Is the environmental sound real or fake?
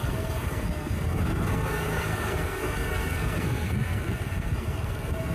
fake